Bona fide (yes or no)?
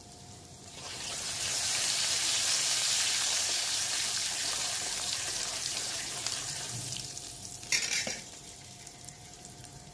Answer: no